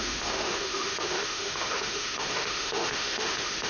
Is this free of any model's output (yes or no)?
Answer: no